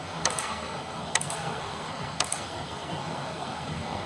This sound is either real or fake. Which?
fake